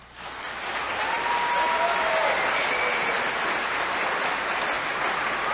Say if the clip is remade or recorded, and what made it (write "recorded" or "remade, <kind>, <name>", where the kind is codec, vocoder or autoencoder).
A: recorded